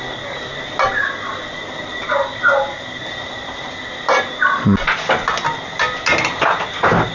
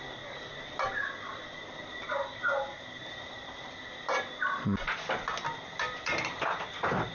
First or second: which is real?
first